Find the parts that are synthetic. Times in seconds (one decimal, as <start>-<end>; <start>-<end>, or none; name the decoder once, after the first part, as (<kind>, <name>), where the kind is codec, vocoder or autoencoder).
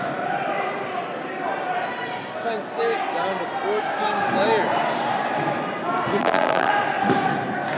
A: 6.2-6.7 (vocoder, BigVGAN v2)